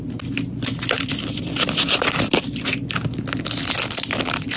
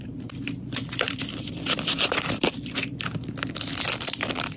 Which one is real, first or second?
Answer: first